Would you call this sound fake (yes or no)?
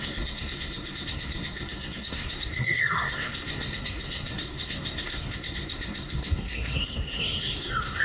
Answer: yes